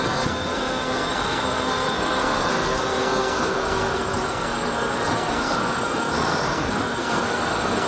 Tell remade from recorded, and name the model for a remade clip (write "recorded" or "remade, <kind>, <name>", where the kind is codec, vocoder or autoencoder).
remade, codec, SNAC